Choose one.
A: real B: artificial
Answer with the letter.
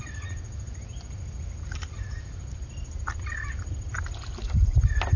A